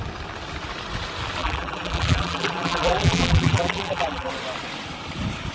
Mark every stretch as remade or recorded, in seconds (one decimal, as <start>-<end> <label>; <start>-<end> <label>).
0.0-1.4 recorded; 1.4-4.3 remade; 4.3-5.5 recorded